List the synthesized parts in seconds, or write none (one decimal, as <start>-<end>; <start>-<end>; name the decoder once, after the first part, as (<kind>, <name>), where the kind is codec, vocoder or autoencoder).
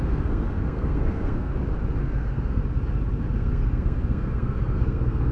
0.0-1.5 (codec, SNAC); 2.0-2.6; 3.3-5.3